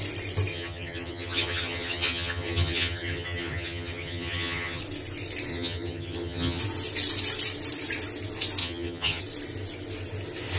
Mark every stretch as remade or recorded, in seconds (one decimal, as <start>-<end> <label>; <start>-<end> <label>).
0.0-0.5 recorded; 0.5-4.8 remade; 4.8-5.5 recorded; 5.5-6.6 remade; 6.6-8.6 recorded; 8.6-9.2 remade; 9.2-10.6 recorded